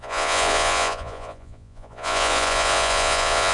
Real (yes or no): no